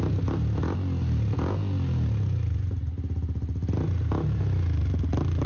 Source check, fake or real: real